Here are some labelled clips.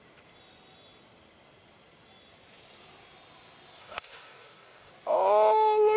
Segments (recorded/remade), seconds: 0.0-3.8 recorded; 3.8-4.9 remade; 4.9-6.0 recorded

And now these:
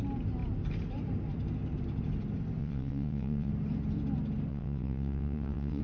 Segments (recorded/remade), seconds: 0.0-2.6 recorded; 2.6-3.5 remade; 3.5-4.5 recorded; 4.5-5.8 remade

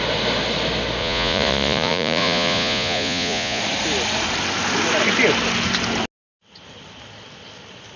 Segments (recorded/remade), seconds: 0.0-1.0 recorded; 1.0-3.6 remade; 3.6-8.0 recorded

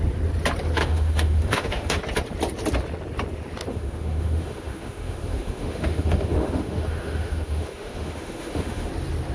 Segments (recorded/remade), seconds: 0.0-0.8 recorded; 0.8-2.0 remade; 2.0-3.7 recorded; 3.7-8.9 remade; 8.9-9.3 recorded

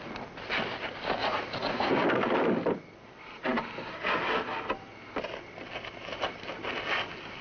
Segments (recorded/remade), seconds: 0.0-1.2 recorded; 1.2-1.9 remade; 1.9-7.4 recorded

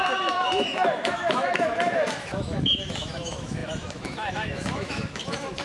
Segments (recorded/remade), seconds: 0.0-5.6 remade

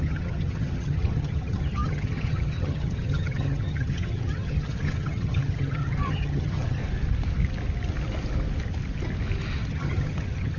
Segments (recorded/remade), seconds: 0.0-6.8 remade; 6.8-9.7 recorded; 9.7-10.6 remade

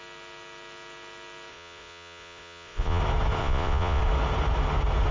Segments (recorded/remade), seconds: 0.0-1.5 recorded; 1.5-3.0 remade; 3.0-3.4 recorded; 3.4-4.0 remade; 4.0-5.1 recorded